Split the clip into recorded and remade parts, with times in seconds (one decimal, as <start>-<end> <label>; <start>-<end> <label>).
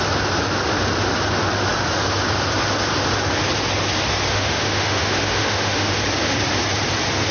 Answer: 0.0-4.3 recorded; 4.3-6.0 remade; 6.0-7.3 recorded